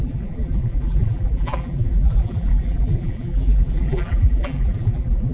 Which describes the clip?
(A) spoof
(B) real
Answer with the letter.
A